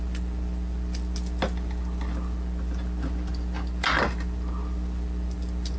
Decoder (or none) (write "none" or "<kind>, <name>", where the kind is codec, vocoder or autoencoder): none